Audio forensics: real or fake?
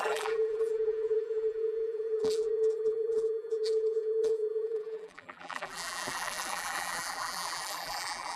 fake